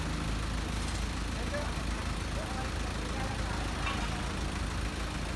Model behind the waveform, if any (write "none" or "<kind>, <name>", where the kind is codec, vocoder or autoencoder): none